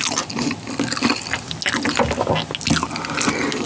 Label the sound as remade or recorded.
recorded